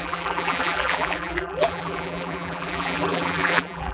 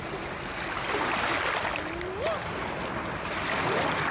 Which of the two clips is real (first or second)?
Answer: second